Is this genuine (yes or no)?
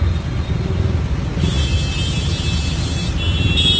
yes